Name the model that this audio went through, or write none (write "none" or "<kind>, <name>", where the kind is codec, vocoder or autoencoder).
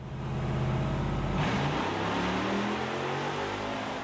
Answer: none